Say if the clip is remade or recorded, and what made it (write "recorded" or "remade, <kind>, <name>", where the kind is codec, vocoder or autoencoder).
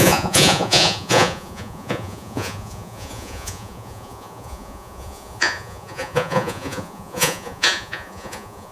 remade, vocoder, Vocos